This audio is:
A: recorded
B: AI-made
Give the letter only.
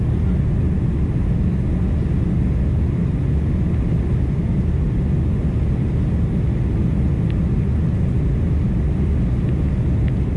A